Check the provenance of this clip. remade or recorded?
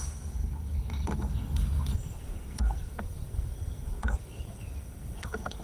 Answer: remade